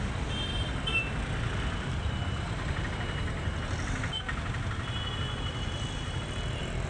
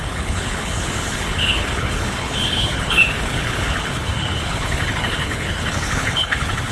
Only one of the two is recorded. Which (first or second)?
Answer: first